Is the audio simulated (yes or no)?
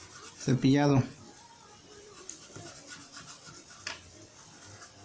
no